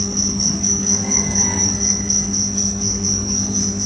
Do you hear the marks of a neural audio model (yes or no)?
yes